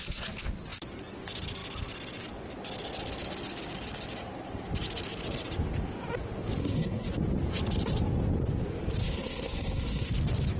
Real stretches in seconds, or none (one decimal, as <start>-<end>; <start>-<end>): 0.0-6.6; 7.1-9.0; 10.1-10.6